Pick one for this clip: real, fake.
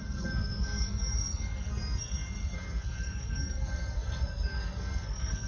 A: fake